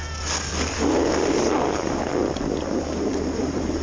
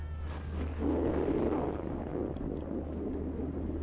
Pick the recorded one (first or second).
second